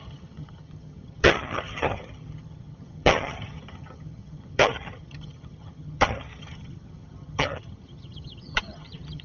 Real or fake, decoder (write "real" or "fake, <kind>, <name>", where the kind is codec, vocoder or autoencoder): fake, vocoder, HiFi-GAN